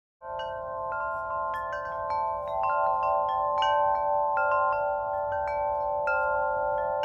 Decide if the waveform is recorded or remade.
recorded